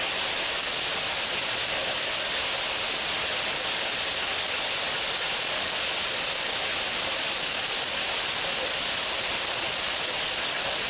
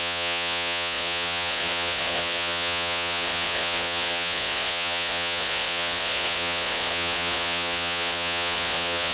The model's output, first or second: second